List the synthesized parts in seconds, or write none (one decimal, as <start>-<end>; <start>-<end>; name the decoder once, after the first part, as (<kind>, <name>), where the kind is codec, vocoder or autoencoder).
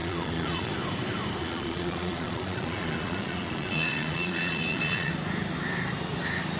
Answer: 0.0-0.7 (vocoder, Vocos); 1.4-5.1